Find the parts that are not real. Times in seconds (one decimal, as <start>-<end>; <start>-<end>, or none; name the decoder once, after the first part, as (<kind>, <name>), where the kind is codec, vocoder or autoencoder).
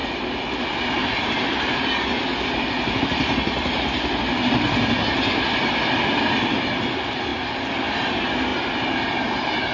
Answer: none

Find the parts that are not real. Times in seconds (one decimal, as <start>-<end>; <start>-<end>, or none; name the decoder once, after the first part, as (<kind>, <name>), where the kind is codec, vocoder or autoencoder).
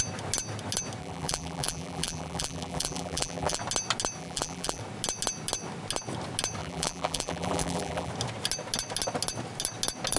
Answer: 1.0-3.6 (vocoder, BigVGAN v2); 4.2-4.8; 6.6-8.1